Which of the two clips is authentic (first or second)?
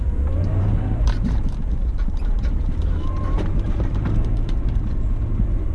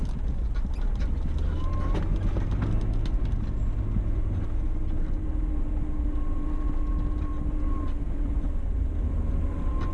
second